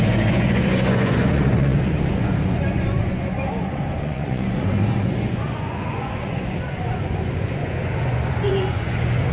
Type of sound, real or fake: fake